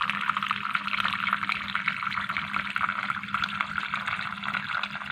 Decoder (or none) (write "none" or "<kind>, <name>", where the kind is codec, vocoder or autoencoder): none